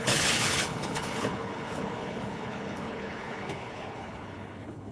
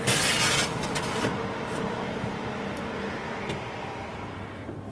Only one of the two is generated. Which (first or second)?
first